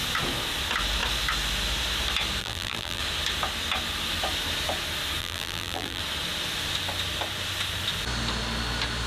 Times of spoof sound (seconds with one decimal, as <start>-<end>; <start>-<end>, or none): 2.4-3.0; 5.2-6.0